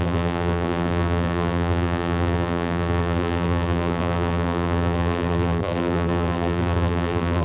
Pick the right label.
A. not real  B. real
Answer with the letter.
A